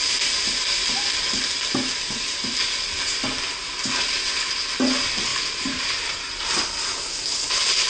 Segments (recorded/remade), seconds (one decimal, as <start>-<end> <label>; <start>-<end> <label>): 0.0-5.3 recorded; 5.3-6.6 remade; 6.6-7.9 recorded